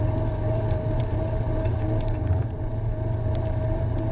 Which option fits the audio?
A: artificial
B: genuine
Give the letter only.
B